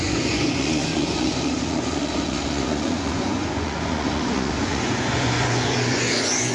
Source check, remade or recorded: remade